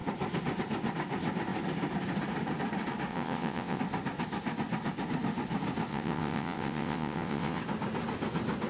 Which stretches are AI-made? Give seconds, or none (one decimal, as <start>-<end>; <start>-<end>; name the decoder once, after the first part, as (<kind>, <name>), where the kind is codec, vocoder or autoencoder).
3.1-3.8 (vocoder, WaveNeXt); 5.9-7.6